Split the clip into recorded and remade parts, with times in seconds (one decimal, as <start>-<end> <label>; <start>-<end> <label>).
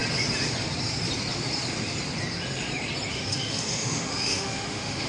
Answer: 0.0-3.1 recorded; 3.1-5.1 remade